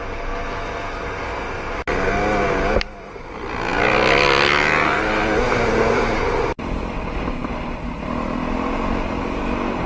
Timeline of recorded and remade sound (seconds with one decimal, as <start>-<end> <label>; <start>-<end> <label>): 0.0-9.9 recorded